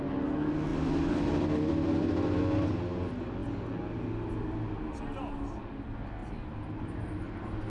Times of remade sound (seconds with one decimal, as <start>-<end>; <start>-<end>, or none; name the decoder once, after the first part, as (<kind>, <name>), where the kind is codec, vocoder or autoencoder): 0.7-2.4 (vocoder, BigVGAN v2); 6.2-6.8